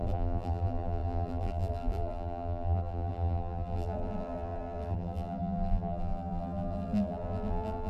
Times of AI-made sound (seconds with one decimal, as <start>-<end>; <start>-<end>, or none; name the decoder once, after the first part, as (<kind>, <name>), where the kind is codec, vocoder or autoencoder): 0.0-7.9 (vocoder, BigVGAN v2)